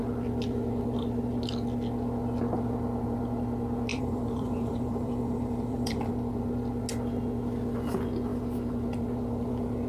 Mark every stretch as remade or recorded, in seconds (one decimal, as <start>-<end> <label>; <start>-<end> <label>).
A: 0.0-3.9 recorded; 3.9-6.1 remade; 6.1-9.9 recorded